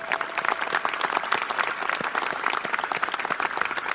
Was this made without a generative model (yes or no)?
yes